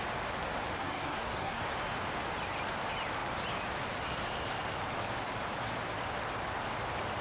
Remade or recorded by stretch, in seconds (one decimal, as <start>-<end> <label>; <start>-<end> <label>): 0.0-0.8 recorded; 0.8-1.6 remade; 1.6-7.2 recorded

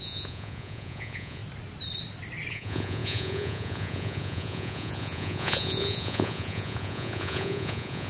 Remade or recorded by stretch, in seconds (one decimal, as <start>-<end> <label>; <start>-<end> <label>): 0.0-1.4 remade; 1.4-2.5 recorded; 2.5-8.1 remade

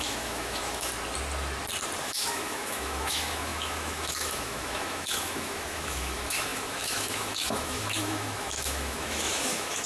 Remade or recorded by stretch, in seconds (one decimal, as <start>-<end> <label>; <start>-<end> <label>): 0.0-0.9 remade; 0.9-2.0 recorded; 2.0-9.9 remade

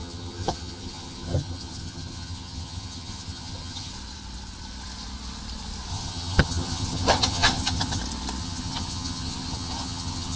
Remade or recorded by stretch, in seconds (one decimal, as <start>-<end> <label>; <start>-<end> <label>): 0.0-3.9 remade; 3.9-5.9 recorded; 5.9-8.0 remade; 8.0-8.4 recorded; 8.4-10.4 remade

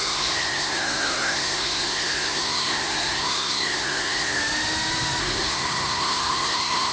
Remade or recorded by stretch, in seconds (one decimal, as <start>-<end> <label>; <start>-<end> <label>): 0.0-4.4 remade; 4.4-5.2 recorded; 5.2-6.9 remade